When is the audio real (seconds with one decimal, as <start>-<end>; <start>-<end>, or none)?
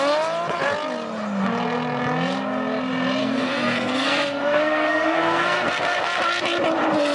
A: 0.0-3.2; 6.2-7.1